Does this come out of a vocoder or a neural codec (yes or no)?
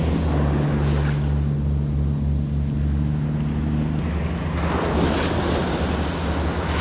no